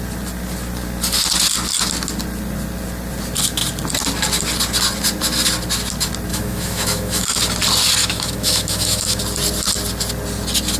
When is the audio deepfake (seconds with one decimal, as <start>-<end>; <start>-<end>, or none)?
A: 6.3-7.4; 8.0-9.2